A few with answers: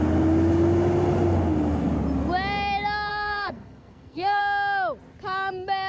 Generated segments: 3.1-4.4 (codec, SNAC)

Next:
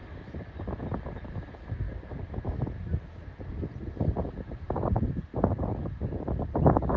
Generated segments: 3.7-5.3 (vocoder, BigVGAN v2)